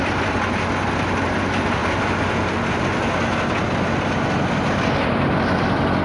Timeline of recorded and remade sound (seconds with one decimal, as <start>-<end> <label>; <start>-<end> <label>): 0.0-6.0 recorded